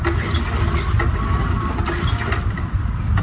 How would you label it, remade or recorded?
recorded